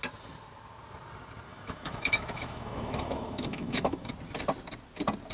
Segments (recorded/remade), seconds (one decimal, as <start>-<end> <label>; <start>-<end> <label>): 0.0-1.5 recorded; 1.5-4.1 remade; 4.1-5.3 recorded